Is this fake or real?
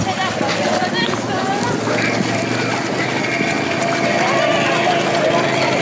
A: real